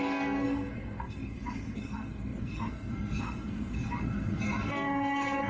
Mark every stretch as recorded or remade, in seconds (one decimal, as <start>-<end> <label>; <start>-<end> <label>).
0.0-5.5 remade